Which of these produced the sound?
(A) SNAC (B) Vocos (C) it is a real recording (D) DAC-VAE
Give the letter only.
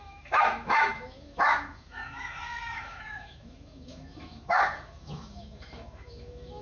D